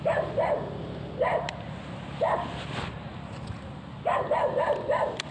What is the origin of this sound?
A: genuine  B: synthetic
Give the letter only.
A